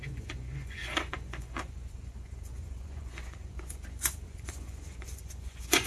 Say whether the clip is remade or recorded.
remade